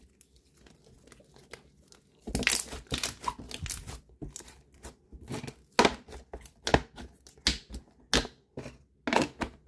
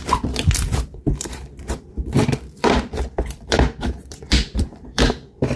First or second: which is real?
first